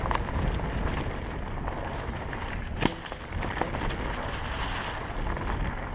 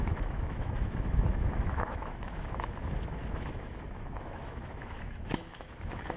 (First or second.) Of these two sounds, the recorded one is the first